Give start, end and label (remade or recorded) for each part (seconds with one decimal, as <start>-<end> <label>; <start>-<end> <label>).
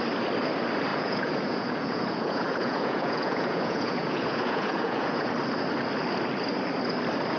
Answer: 0.0-0.9 recorded; 0.9-5.3 remade; 5.3-7.4 recorded